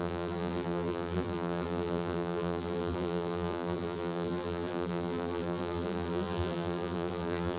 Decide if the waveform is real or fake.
fake